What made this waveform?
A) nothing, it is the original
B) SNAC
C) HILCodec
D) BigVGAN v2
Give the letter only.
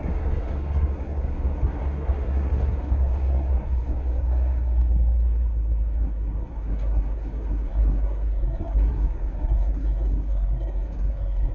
B